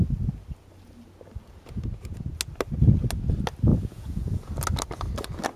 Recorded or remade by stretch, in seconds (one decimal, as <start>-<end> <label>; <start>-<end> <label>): 0.0-3.7 recorded; 3.7-4.5 remade; 4.5-5.6 recorded